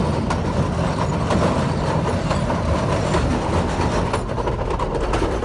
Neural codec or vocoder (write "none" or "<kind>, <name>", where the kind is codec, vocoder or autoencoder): none